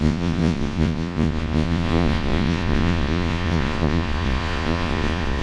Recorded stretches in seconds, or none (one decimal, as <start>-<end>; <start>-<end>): none

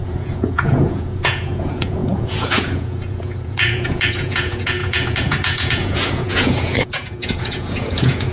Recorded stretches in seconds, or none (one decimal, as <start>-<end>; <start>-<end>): none

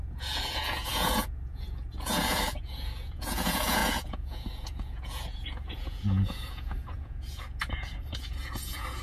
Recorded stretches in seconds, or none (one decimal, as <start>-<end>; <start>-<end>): none

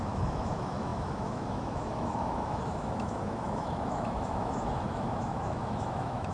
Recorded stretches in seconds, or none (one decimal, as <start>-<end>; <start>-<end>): none